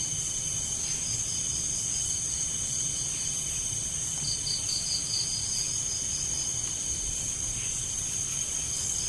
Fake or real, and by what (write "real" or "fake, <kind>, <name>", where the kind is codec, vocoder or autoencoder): fake, vocoder, BigVGAN v2